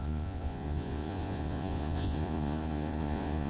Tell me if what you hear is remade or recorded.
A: remade